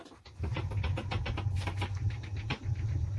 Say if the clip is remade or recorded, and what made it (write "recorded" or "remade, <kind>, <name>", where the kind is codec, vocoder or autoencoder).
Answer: remade, vocoder, BigVGAN v2